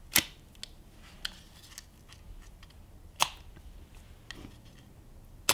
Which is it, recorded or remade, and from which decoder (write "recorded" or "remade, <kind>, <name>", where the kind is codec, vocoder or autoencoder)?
recorded